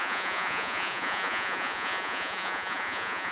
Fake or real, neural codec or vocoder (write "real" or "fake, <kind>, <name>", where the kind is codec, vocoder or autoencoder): fake, vocoder, Vocos